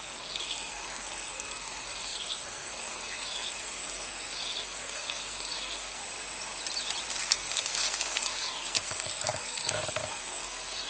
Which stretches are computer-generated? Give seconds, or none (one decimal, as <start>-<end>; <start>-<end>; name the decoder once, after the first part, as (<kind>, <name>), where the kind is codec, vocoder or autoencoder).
0.0-6.0 (codec, SNAC); 7.2-10.9